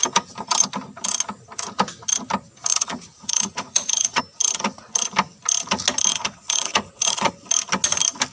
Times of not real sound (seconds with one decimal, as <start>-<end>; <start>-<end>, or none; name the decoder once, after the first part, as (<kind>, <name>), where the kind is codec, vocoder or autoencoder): 2.7-4.2 (vocoder, Vocos); 6.1-7.3